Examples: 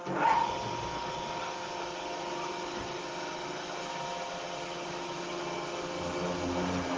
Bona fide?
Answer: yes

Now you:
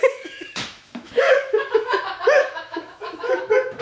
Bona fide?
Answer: no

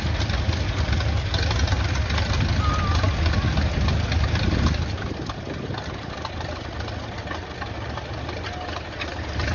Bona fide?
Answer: yes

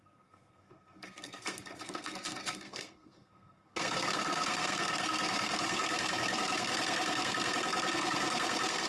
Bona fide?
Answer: no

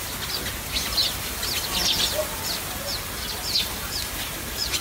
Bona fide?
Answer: yes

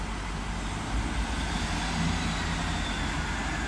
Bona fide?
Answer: yes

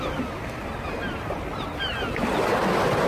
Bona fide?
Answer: yes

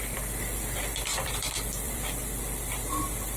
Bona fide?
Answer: no